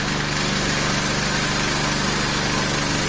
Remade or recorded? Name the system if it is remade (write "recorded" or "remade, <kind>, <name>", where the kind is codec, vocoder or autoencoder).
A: recorded